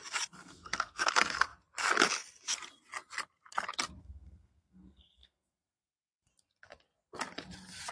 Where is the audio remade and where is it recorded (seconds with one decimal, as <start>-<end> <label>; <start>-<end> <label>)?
0.0-0.4 recorded; 0.4-1.1 remade; 1.1-4.0 recorded; 4.0-6.3 remade; 6.3-7.9 recorded